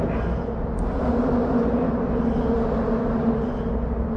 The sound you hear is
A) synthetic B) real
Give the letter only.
B